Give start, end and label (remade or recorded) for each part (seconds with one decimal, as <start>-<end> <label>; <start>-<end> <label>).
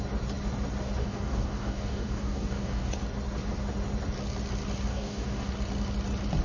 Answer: 0.0-1.0 recorded; 1.0-2.9 remade; 2.9-4.9 recorded; 4.9-5.5 remade; 5.5-6.4 recorded